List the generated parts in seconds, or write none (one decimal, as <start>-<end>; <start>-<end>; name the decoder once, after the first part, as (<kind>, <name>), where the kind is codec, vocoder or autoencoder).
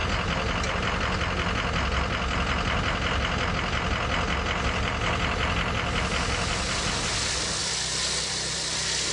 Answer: none